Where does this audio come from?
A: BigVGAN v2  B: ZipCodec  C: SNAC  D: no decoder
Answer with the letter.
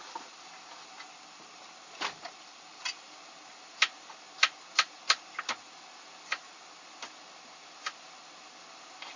D